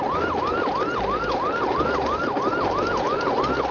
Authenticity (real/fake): real